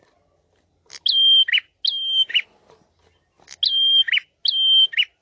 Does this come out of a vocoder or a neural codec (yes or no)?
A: no